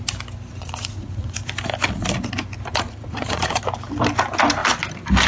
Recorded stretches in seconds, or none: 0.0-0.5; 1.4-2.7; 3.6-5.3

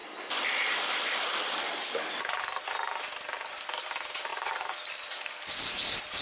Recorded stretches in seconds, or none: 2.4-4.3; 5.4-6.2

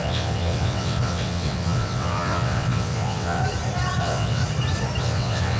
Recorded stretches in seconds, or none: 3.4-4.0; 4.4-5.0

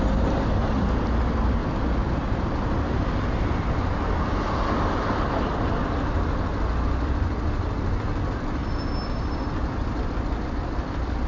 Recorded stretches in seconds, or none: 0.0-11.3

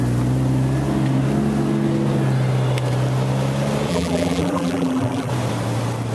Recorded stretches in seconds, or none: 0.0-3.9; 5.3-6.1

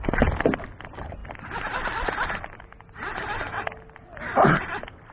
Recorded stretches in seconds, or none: 0.0-5.1

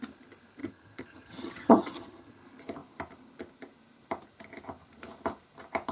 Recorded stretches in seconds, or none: 0.0-0.6; 2.4-5.9